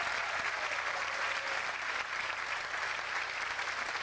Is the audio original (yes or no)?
yes